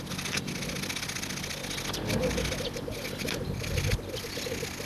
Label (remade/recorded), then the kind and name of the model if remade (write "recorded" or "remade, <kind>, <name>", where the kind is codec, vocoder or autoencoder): recorded